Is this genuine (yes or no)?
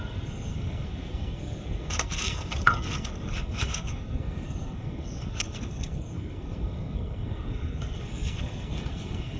no